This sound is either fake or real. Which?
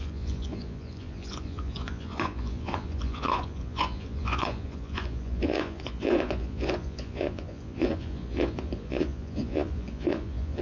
fake